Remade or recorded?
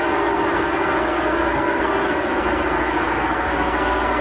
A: remade